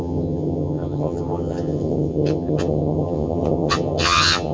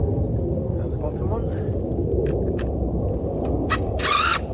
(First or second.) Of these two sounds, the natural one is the second